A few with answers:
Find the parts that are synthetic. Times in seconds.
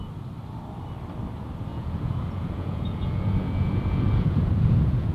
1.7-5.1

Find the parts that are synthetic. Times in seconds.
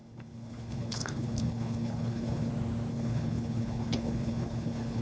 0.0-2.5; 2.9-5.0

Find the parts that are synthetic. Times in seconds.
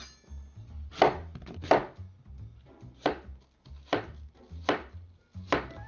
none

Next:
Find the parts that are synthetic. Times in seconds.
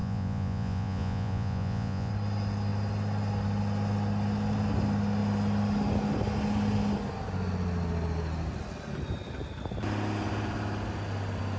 0.0-2.1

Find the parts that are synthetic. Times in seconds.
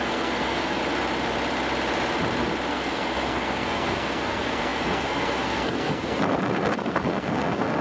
0.0-0.8; 2.7-7.8